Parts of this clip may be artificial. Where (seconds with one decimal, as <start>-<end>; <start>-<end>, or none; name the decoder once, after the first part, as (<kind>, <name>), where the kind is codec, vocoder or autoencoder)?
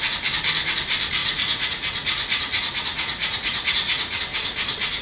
1.2-4.2 (vocoder, Vocos)